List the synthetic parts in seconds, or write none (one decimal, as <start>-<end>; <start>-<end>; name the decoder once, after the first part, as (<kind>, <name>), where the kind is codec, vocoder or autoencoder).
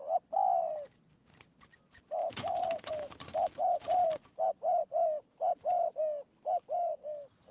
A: 2.2-2.9 (vocoder, BigVGAN v2)